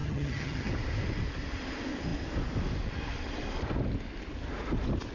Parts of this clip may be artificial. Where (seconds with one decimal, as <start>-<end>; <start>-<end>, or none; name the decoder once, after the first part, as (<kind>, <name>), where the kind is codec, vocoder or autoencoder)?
0.0-0.7 (vocoder, HiFi-GAN)